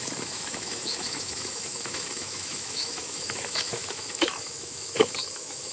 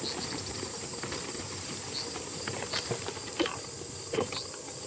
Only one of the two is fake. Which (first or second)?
first